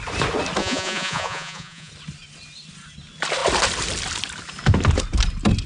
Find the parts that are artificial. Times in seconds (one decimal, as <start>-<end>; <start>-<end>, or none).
0.6-1.9